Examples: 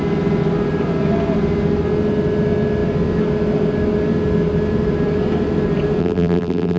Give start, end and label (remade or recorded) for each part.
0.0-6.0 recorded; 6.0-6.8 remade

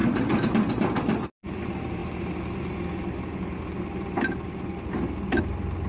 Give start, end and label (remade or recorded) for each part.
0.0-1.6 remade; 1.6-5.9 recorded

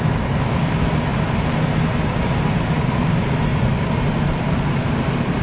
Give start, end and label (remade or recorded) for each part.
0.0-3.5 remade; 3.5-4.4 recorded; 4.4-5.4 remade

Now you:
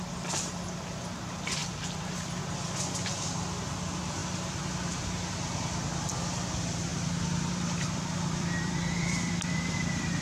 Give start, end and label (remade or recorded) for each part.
0.0-6.9 remade; 6.9-7.5 recorded; 7.5-10.2 remade